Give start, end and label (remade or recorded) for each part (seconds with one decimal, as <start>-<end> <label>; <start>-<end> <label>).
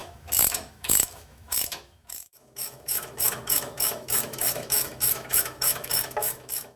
0.0-6.8 remade